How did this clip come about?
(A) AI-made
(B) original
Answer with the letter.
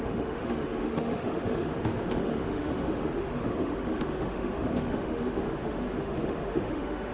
A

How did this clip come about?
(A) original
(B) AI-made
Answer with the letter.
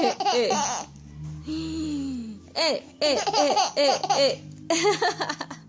A